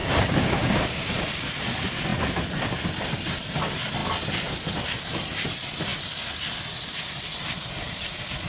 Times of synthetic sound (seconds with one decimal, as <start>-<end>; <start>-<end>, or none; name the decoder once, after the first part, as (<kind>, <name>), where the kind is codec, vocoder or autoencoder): 0.0-1.1 (codec, DAC)